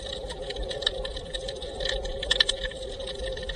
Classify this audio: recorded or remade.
recorded